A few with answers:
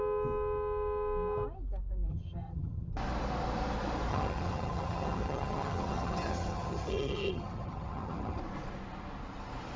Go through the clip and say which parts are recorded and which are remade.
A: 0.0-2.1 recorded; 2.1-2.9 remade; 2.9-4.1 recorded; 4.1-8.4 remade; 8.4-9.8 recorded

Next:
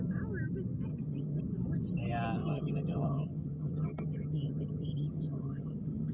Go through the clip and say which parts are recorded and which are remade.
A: 0.0-0.9 recorded; 0.9-1.4 remade; 1.4-2.4 recorded; 2.4-6.1 remade

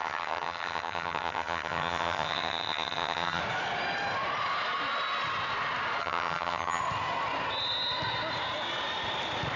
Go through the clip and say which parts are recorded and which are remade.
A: 0.0-3.4 remade; 3.4-6.0 recorded; 6.0-6.8 remade; 6.8-9.6 recorded

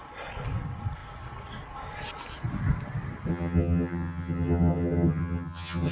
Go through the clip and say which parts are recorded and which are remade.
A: 0.0-3.3 recorded; 3.3-5.9 remade

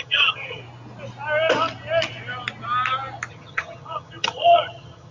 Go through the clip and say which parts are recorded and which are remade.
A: 0.0-0.6 remade; 0.6-3.3 recorded; 3.3-5.1 remade

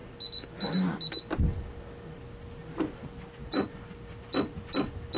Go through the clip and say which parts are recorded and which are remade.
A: 0.0-5.2 recorded

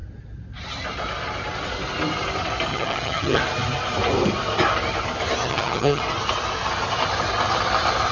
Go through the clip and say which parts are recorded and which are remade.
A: 0.0-2.7 recorded; 2.7-3.4 remade; 3.4-5.4 recorded; 5.4-6.0 remade; 6.0-8.1 recorded